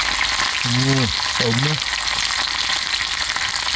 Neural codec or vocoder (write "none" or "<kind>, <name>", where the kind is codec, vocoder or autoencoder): none